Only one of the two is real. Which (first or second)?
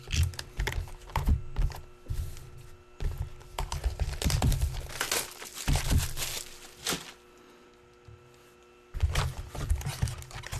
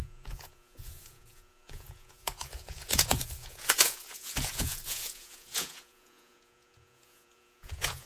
first